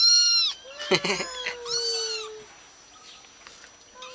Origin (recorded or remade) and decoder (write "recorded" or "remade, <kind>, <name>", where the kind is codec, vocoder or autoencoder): recorded